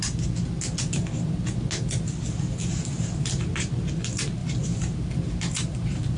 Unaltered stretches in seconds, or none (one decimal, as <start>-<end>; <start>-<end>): 0.0-2.6; 3.5-4.4